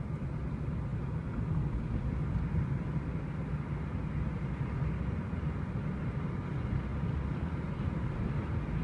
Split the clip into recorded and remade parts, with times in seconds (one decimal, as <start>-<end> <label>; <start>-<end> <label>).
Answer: 0.0-8.8 recorded